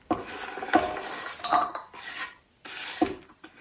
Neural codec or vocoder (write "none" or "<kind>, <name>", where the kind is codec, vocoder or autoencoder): none